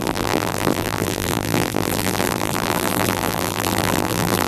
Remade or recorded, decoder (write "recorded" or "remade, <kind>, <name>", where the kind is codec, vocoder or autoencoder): remade, vocoder, BigVGAN v2